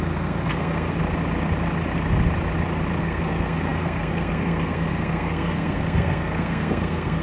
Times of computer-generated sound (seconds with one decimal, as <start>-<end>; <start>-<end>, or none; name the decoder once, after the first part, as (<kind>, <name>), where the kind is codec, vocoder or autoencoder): 0.0-1.0 (codec, SNAC); 3.0-7.2